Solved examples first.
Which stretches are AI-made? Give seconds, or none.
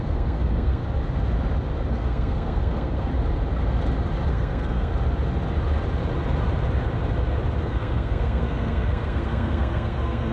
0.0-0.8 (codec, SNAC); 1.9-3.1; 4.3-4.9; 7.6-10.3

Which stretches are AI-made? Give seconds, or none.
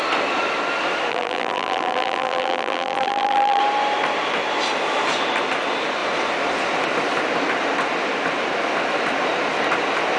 1.1-3.6 (vocoder, BigVGAN v2)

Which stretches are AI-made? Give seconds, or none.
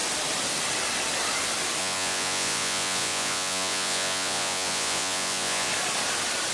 1.8-5.7 (vocoder, Vocos)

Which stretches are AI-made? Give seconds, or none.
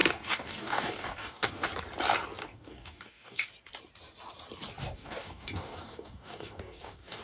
0.0-1.7 (codec, DAC); 2.4-3.5; 4.8-7.2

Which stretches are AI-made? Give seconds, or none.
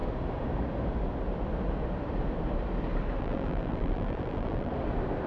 3.2-4.7 (vocoder, BigVGAN v2)